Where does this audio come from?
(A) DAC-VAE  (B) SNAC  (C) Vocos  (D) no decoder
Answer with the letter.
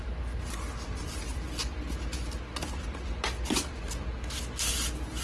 D